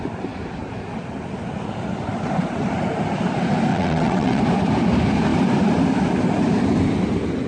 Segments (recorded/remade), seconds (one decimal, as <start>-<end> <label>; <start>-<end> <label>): 0.0-3.7 recorded; 3.7-4.4 remade; 4.4-7.5 recorded